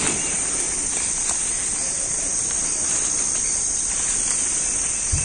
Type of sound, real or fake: real